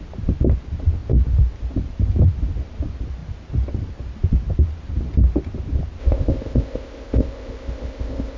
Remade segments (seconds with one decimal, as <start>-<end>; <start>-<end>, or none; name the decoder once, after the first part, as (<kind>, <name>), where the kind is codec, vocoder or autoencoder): 6.0-8.4 (codec, ZipCodec)

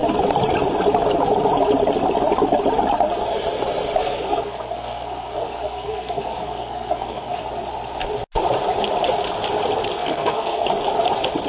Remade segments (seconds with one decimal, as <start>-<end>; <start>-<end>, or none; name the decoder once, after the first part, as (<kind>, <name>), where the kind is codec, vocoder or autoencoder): 4.0-7.4 (codec, SNAC); 10.0-10.7

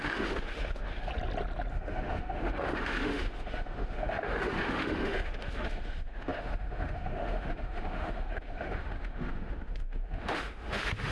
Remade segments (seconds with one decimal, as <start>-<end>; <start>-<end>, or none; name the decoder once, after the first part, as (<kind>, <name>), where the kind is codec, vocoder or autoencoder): 0.0-1.1 (autoencoder, DAC-VAE); 1.7-11.1

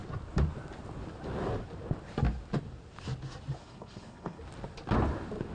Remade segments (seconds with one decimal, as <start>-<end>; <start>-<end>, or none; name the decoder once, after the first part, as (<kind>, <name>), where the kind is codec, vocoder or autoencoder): 3.6-4.4 (codec, HILCodec)

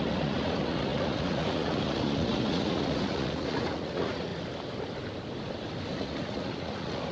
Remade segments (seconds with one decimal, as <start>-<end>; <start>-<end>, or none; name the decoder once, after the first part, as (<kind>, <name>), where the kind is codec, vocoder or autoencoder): 0.0-4.3 (vocoder, Vocos); 6.0-7.1

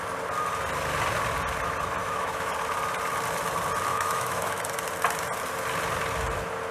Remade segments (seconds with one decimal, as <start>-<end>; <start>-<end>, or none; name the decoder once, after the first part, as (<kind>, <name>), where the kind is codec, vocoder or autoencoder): 2.0-2.5 (autoencoder, DAC-VAE); 3.9-4.6